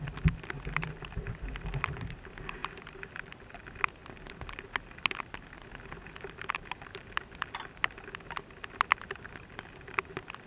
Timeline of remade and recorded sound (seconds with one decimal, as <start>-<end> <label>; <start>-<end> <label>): 0.0-10.5 recorded